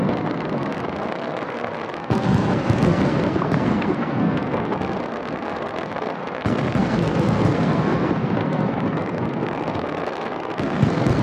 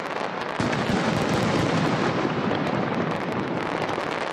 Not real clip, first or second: first